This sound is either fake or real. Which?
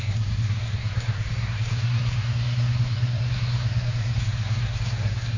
fake